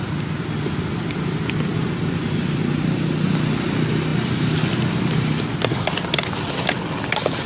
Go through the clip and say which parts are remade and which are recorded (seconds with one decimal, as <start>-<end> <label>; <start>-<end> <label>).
0.0-7.5 recorded

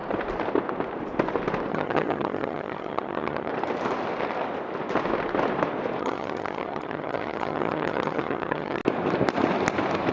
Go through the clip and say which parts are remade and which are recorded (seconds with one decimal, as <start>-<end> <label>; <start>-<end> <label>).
0.0-1.7 recorded; 1.7-3.5 remade; 3.5-6.0 recorded; 6.0-8.8 remade; 8.8-10.1 recorded

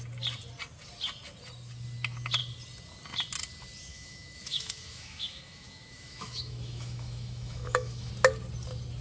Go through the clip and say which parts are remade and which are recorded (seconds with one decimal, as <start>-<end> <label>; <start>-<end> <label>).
0.0-3.9 recorded; 3.9-8.1 remade; 8.1-9.0 recorded

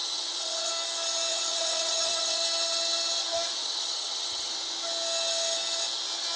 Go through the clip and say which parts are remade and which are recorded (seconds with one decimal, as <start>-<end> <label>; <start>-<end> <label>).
0.0-0.7 remade; 0.7-1.3 recorded; 1.3-2.4 remade; 2.4-3.6 recorded; 3.6-4.5 remade; 4.5-6.4 recorded

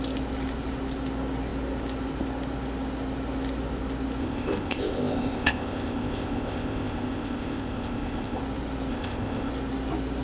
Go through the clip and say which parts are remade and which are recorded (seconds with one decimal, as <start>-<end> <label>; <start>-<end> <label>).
0.0-4.2 recorded; 4.2-8.4 remade; 8.4-8.9 recorded; 8.9-9.5 remade; 9.5-10.2 recorded